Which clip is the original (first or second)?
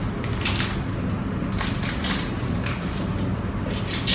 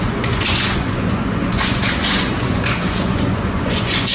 first